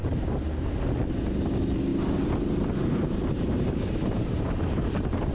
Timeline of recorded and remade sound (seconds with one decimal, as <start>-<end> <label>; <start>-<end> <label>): 0.0-0.7 remade; 0.7-1.9 recorded; 1.9-5.3 remade